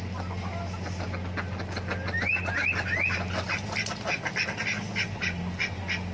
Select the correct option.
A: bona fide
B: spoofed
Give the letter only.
A